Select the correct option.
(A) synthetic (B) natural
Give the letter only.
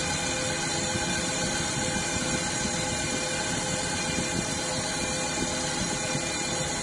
B